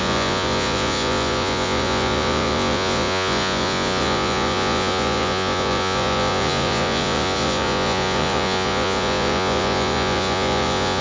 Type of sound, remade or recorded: remade